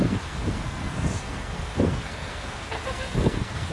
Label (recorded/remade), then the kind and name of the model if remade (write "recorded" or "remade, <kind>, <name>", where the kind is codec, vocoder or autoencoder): remade, codec, SNAC